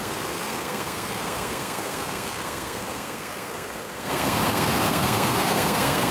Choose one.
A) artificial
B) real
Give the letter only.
A